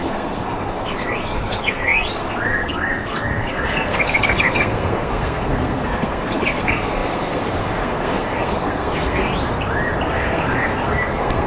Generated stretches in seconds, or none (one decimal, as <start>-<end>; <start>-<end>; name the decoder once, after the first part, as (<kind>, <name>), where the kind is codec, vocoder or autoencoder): 0.0-9.3 (codec, SNAC); 10.1-11.5